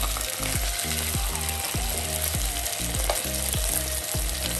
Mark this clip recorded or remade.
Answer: recorded